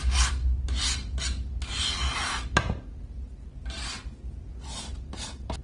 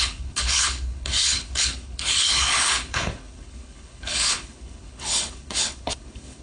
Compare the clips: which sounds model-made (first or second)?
second